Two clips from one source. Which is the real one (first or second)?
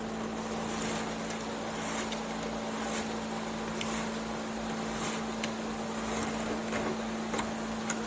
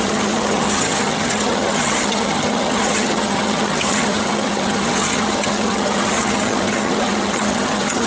first